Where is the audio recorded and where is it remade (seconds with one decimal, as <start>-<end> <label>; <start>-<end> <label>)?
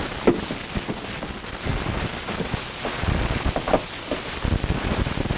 0.0-5.4 recorded